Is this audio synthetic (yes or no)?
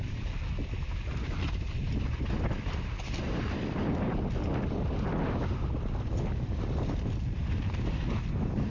no